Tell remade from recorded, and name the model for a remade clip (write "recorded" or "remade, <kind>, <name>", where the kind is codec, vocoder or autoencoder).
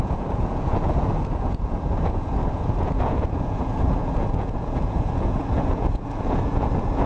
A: remade, vocoder, Vocos